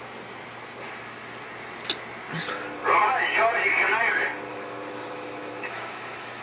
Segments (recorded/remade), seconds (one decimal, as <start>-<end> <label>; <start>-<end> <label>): 0.0-4.5 recorded; 4.5-6.4 remade